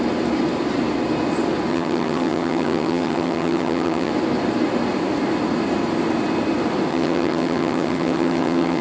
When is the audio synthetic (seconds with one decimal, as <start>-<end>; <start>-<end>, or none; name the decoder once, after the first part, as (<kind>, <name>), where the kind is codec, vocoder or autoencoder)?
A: 1.7-4.1 (vocoder, HiFi-GAN); 6.9-8.8